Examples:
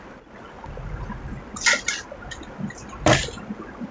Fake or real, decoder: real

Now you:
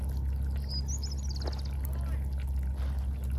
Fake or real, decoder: real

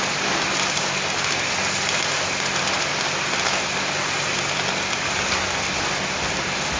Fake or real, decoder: real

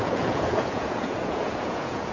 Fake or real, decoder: fake, vocoder, Vocos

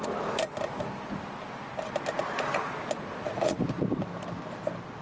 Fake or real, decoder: real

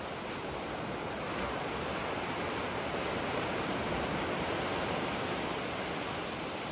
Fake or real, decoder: real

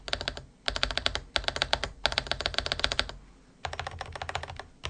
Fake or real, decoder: real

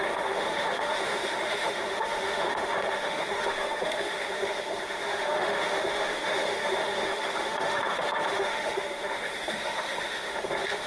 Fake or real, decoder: fake, autoencoder, DAC-VAE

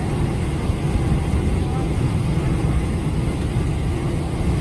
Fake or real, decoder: real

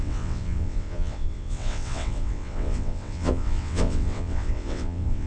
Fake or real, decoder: fake, vocoder, WaveNeXt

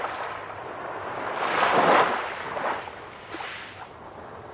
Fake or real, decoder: real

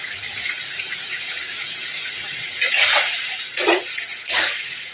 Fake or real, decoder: fake, vocoder, Vocos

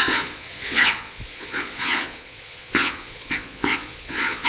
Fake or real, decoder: fake, vocoder, Vocos